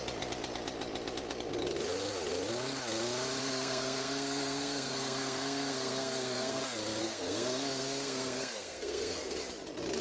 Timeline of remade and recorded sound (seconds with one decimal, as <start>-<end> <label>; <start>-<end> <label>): 0.0-3.4 recorded; 3.4-6.6 remade; 6.6-7.0 recorded; 7.0-9.4 remade; 9.4-10.0 recorded